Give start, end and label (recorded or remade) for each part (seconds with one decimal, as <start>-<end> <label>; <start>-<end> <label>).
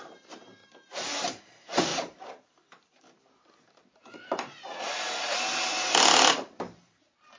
0.0-1.9 remade; 1.9-6.3 recorded; 6.3-7.4 remade